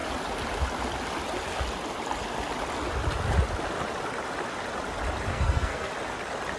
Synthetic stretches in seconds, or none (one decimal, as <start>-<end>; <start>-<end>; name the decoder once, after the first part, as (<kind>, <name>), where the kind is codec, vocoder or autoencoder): 5.3-5.9 (codec, SNAC)

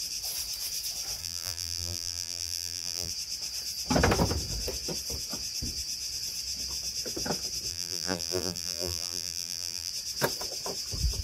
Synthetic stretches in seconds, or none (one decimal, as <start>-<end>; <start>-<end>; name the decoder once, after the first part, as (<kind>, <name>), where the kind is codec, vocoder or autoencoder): 1.2-3.1 (vocoder, BigVGAN v2); 7.7-9.9

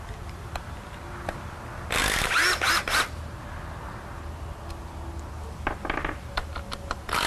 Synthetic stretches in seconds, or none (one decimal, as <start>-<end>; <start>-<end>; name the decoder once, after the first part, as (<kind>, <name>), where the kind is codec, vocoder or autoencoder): 0.0-2.0 (vocoder, BigVGAN v2); 5.4-7.3

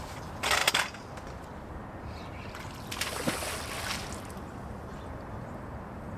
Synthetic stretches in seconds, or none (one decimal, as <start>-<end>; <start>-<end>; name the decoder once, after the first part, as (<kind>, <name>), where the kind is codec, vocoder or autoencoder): none

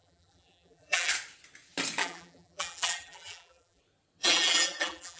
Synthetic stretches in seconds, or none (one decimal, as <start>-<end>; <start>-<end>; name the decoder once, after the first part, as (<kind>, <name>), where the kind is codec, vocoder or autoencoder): 0.0-1.1 (vocoder, BigVGAN v2); 2.0-3.8; 4.2-5.2

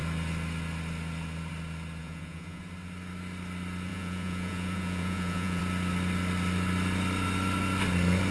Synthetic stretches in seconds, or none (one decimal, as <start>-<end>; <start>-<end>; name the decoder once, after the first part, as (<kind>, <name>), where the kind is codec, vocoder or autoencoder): 2.0-2.6 (vocoder, Vocos); 3.9-5.6